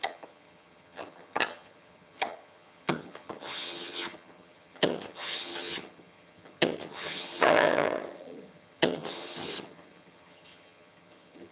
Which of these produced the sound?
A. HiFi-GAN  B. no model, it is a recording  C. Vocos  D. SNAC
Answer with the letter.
A